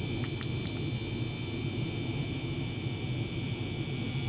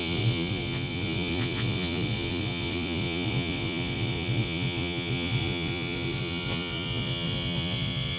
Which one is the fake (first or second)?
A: second